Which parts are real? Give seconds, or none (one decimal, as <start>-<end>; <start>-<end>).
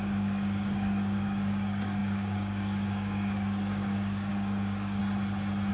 5.0-5.7